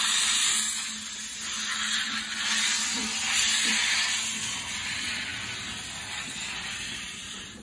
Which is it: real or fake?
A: real